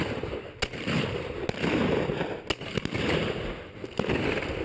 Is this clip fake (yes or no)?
no